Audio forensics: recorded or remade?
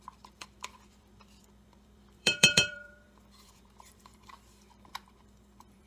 remade